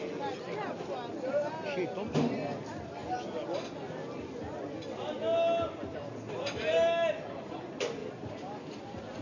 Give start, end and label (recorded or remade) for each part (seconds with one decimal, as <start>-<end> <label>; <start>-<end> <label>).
0.0-9.2 recorded